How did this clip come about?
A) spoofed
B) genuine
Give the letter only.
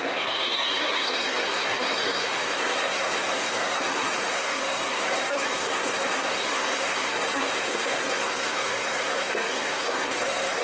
A